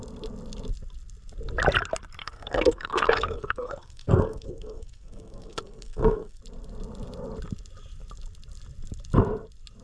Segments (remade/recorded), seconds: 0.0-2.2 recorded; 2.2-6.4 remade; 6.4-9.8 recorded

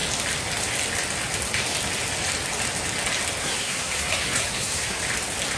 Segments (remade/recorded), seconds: 0.0-3.4 recorded; 3.4-5.0 remade; 5.0-5.6 recorded

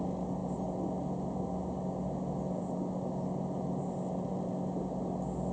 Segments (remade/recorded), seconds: 0.0-5.5 recorded

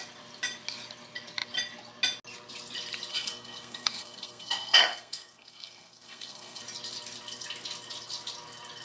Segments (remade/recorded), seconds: 0.0-3.1 recorded; 3.1-6.6 remade; 6.6-8.8 recorded